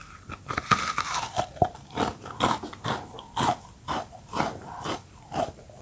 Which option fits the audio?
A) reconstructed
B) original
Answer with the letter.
A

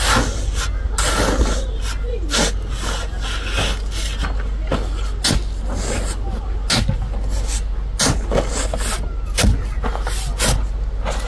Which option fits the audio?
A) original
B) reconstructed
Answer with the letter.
A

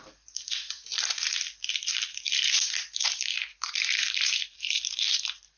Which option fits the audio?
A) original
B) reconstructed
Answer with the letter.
B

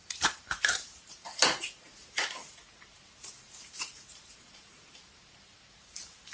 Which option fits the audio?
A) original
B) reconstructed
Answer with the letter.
B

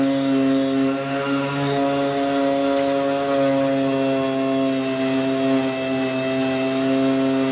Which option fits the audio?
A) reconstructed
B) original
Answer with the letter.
B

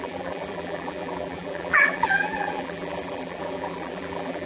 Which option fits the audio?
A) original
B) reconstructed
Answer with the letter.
B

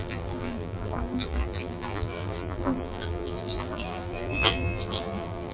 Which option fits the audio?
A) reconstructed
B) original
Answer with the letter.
A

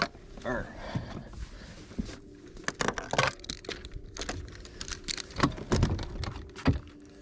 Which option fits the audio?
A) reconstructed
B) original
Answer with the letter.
B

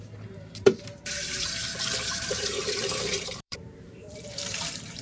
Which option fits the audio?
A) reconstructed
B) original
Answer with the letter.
A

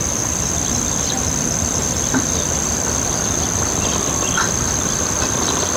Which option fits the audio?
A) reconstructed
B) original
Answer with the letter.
A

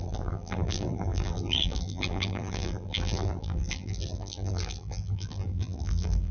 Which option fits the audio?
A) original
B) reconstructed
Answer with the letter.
B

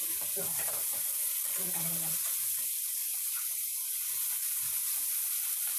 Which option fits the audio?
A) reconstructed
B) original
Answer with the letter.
A